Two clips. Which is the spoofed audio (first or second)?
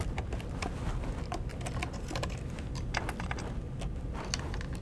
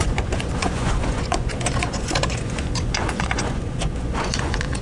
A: second